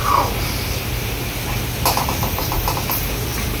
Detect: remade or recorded recorded